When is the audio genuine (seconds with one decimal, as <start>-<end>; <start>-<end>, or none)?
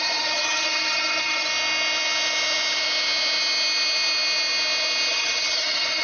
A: 1.5-5.1